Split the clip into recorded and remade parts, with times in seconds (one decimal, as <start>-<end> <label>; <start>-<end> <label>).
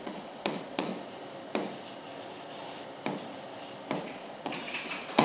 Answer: 0.0-0.9 remade; 0.9-4.0 recorded; 4.0-5.2 remade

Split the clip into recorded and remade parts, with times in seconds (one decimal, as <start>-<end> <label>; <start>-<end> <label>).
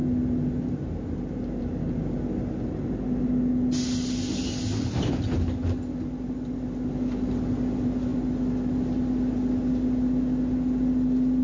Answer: 0.0-11.4 recorded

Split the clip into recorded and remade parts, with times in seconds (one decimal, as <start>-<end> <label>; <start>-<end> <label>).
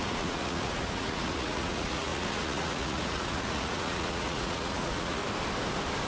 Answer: 0.0-5.2 remade; 5.2-6.1 recorded